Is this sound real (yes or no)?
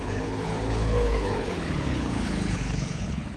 no